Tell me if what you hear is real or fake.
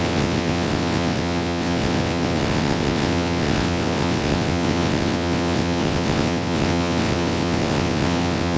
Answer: fake